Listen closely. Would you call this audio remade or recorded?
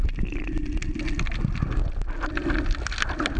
recorded